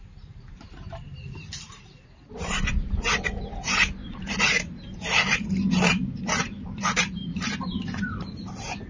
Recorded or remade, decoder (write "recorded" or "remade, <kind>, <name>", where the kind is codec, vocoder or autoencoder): remade, vocoder, BigVGAN v2